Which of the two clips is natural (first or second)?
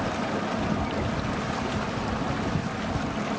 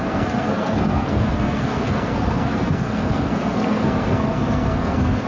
first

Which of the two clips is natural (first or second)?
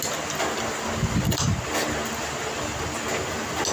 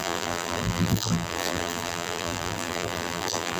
first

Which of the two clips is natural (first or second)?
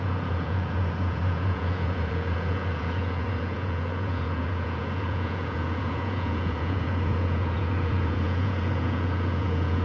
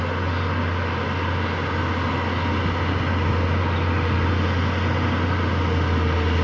second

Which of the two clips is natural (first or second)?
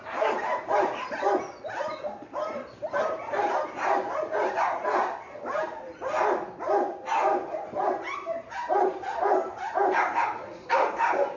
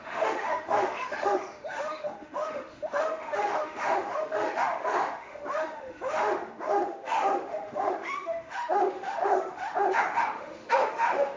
first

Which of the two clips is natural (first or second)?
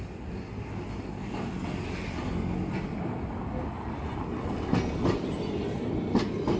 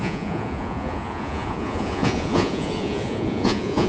first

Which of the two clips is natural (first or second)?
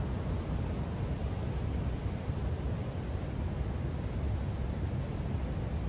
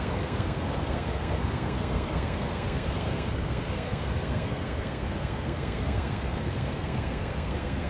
first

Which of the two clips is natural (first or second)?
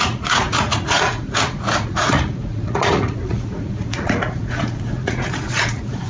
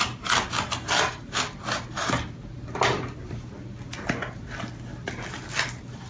second